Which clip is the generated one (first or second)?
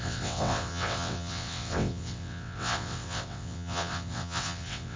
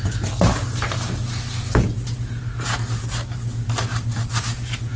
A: first